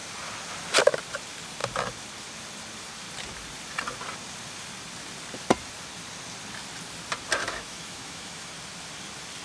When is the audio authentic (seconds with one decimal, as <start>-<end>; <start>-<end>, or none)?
0.0-7.4; 8.5-9.4